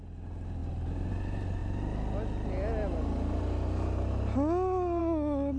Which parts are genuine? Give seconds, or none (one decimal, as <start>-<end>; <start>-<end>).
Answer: 0.0-5.6